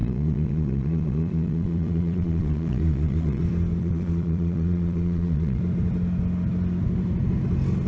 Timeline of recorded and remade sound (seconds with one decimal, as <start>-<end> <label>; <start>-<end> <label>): 0.0-3.4 remade; 3.4-3.8 recorded; 3.8-5.6 remade; 5.6-7.9 recorded